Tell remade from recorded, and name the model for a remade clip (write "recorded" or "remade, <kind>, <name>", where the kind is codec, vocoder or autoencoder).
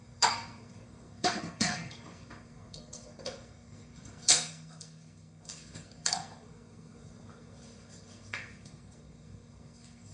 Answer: remade, codec, SNAC